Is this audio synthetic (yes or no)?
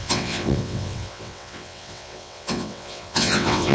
yes